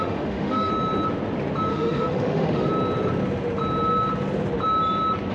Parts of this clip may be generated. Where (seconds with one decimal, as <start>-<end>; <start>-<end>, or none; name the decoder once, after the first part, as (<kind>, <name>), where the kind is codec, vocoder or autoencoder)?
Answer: 0.0-0.7 (autoencoder, DAC-VAE); 1.7-2.7